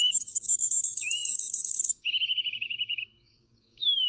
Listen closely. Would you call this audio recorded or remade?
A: remade